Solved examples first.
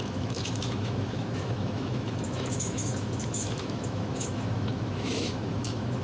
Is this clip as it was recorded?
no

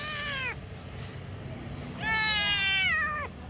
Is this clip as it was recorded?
yes